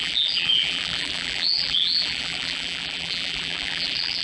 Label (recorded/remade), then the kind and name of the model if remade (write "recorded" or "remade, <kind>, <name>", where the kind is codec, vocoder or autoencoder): remade, vocoder, BigVGAN v2